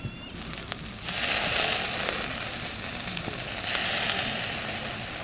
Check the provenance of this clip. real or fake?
real